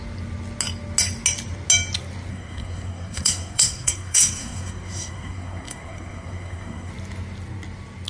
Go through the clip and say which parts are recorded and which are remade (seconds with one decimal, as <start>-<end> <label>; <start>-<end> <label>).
0.0-2.3 recorded; 2.3-6.9 remade; 6.9-8.1 recorded